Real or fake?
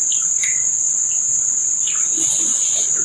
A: real